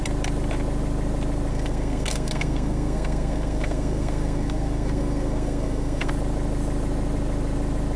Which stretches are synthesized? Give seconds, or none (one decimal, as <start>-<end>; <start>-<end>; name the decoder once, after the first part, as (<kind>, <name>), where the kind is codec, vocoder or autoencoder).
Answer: 1.5-6.1 (codec, SNAC)